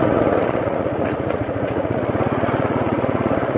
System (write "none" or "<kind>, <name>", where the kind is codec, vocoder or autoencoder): vocoder, Vocos